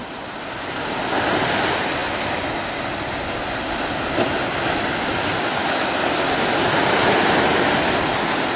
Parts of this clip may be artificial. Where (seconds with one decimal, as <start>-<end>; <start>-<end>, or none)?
none

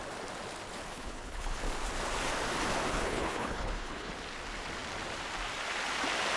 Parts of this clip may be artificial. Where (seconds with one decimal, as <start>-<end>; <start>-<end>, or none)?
0.9-1.6; 2.9-4.1